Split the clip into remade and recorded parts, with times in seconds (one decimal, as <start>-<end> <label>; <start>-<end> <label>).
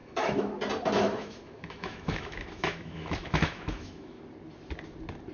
0.0-0.5 remade; 0.5-1.0 recorded; 1.0-4.2 remade; 4.2-5.3 recorded